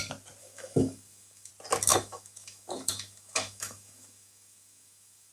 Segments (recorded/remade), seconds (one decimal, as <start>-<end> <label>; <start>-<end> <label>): 0.0-0.4 recorded; 0.4-1.5 remade; 1.5-1.9 recorded; 1.9-5.3 remade

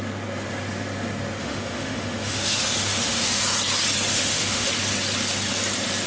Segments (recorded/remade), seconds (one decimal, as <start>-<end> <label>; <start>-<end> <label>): 0.0-1.4 recorded; 1.4-3.4 remade; 3.4-4.1 recorded; 4.1-4.7 remade; 4.7-6.1 recorded

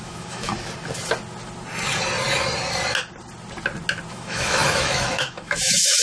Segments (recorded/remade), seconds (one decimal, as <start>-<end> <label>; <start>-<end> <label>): 0.0-0.5 remade; 0.5-4.1 recorded; 4.1-6.0 remade